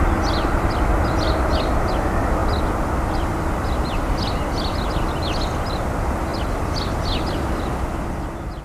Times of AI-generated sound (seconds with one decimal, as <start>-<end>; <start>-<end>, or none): none

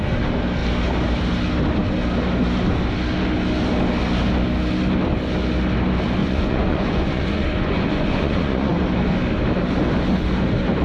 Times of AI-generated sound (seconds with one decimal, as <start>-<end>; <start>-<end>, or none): 6.2-8.8

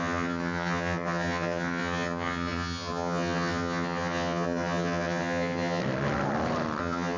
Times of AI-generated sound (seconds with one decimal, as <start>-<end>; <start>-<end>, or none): 0.0-5.8; 6.8-7.2

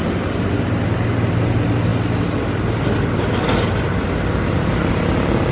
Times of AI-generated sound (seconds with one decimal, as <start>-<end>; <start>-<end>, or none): none

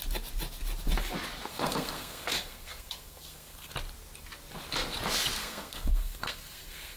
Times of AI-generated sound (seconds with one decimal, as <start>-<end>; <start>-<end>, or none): 1.5-3.7; 5.4-7.0